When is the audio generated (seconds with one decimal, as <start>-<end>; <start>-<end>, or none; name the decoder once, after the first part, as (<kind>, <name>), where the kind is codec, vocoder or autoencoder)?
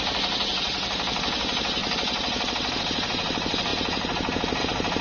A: none